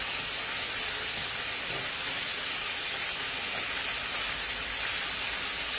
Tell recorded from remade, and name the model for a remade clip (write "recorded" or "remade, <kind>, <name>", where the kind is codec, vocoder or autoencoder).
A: recorded